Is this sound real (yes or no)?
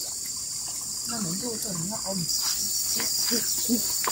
yes